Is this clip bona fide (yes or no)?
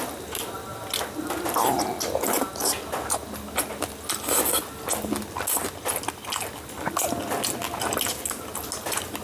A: yes